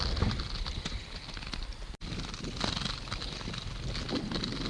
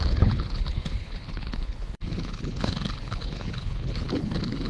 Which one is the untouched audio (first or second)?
first